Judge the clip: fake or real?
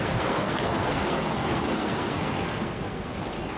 fake